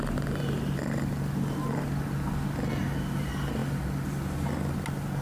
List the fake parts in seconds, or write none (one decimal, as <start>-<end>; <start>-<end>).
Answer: none